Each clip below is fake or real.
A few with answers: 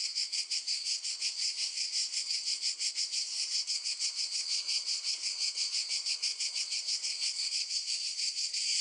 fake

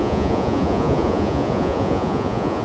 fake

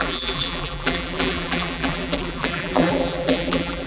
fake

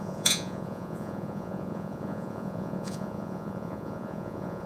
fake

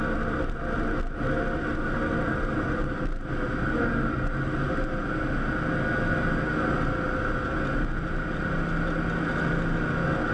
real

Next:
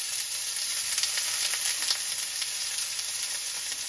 real